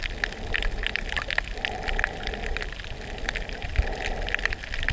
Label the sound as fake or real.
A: real